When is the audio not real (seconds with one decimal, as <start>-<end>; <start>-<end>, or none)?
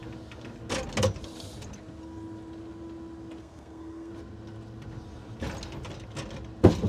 3.4-4.1